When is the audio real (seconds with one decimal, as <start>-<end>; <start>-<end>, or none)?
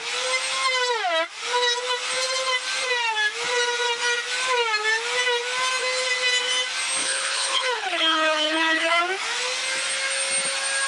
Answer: 0.0-7.0; 9.0-10.9